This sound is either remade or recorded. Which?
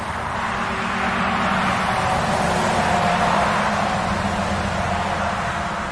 recorded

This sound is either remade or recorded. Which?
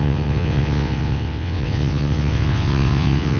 remade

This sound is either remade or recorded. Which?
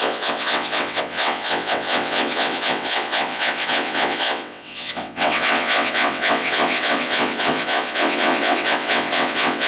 remade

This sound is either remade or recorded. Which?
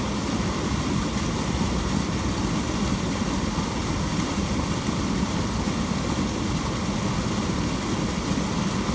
recorded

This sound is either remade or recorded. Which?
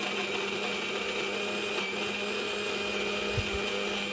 recorded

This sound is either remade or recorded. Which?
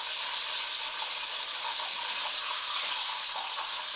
recorded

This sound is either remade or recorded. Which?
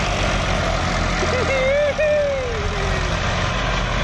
recorded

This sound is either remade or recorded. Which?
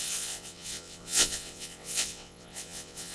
remade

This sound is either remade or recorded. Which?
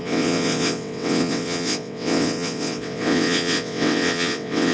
remade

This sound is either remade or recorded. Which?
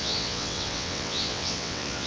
remade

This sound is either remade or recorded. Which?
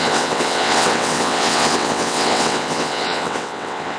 remade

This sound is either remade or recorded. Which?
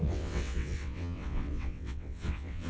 remade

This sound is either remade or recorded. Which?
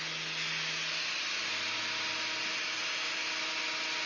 recorded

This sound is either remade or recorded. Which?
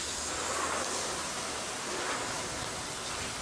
recorded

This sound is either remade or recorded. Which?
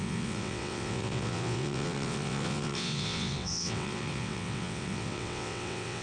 remade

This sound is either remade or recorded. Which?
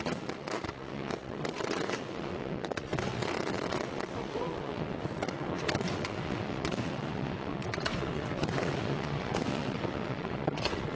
remade